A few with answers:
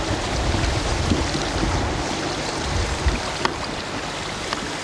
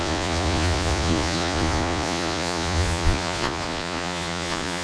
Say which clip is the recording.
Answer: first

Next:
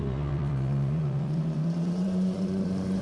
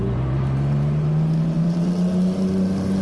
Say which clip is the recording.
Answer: second